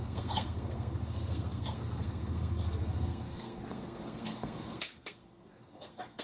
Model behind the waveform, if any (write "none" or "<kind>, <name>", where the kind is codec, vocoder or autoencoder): codec, SNAC